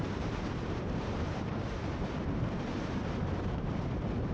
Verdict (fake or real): fake